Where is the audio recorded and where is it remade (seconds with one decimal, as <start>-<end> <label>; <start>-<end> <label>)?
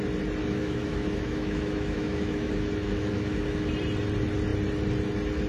0.0-0.4 recorded; 0.4-3.7 remade; 3.7-5.5 recorded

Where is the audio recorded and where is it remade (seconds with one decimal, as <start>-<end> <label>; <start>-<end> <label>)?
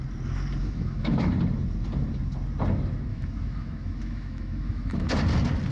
0.0-0.6 recorded; 0.6-1.3 remade; 1.3-3.1 recorded; 3.1-5.1 remade; 5.1-5.7 recorded